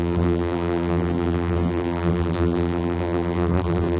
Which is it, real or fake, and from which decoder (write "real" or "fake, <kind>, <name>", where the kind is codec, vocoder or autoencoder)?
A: fake, vocoder, BigVGAN v2